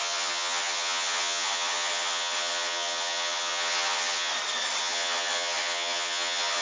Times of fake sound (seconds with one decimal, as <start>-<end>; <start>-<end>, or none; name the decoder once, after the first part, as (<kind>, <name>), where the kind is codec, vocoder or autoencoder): 0.0-4.3 (vocoder, HiFi-GAN); 4.8-6.6